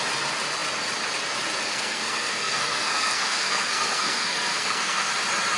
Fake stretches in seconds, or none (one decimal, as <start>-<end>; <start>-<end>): 1.7-5.1